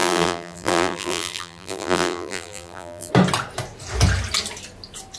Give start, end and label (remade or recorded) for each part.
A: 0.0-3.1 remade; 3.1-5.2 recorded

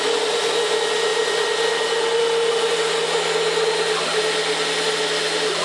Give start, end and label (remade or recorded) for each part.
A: 0.0-1.1 recorded; 1.1-2.2 remade; 2.2-5.6 recorded